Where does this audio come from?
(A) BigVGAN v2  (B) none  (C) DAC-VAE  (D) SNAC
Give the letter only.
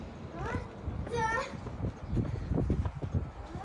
B